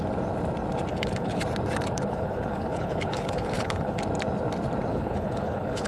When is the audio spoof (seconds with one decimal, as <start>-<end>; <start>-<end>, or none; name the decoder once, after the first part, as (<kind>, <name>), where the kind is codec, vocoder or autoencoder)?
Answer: 0.9-1.4 (codec, HILCodec); 1.9-4.0; 4.9-5.9

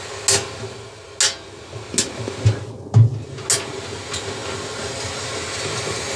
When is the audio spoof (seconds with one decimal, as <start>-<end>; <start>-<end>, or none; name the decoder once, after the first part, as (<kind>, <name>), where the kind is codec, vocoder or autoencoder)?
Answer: none

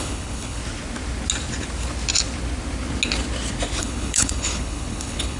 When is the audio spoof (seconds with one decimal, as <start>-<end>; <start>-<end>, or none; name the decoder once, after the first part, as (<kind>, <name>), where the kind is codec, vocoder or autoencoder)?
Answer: 0.0-0.6 (codec, HILCodec); 3.8-5.4

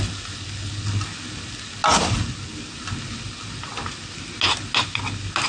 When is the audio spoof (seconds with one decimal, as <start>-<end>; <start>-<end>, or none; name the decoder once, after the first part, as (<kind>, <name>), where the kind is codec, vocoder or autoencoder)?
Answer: none

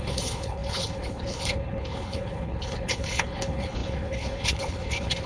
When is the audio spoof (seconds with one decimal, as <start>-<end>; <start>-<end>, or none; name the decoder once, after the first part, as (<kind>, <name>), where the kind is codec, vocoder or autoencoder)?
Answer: 0.0-5.3 (codec, HILCodec)

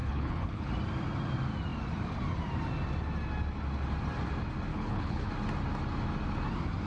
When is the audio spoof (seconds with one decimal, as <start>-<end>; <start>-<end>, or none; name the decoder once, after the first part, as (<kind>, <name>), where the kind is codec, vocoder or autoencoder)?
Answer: 0.0-0.7 (codec, HILCodec); 4.7-5.3